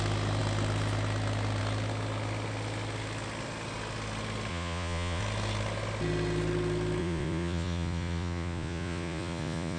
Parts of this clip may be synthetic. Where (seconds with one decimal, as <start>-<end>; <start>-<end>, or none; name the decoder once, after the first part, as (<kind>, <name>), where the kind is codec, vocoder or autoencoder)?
4.5-5.2 (vocoder, Vocos); 7.0-9.8